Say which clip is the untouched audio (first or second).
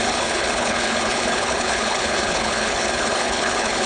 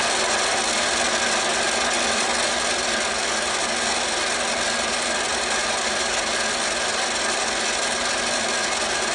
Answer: second